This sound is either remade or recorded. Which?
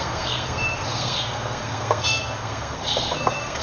remade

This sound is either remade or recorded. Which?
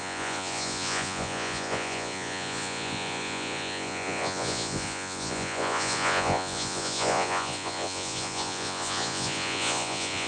remade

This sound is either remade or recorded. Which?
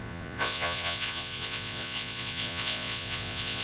remade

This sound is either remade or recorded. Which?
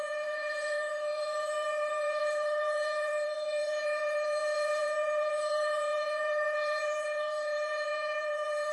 remade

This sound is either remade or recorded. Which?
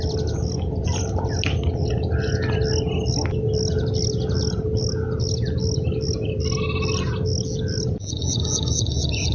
recorded